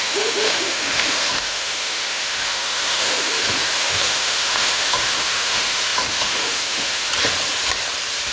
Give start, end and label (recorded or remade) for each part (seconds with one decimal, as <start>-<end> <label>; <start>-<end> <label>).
0.0-7.1 remade; 7.1-8.3 recorded